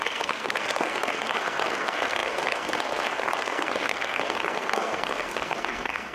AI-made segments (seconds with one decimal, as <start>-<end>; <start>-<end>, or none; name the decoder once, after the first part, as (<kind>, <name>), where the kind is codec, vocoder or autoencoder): 0.0-6.1 (codec, SNAC)